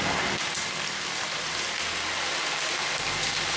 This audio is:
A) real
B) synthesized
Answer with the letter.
A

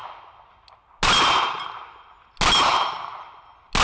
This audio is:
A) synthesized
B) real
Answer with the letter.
B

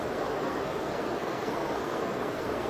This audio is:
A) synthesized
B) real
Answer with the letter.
A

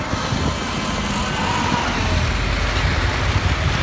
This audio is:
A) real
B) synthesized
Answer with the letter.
A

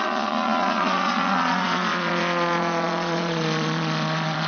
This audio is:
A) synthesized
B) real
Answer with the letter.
A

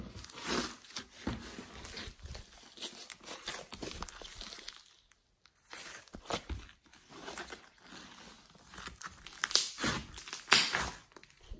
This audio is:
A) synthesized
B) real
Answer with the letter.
B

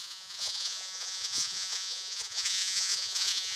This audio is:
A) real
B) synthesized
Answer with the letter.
B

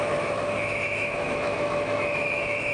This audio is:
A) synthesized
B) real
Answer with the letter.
A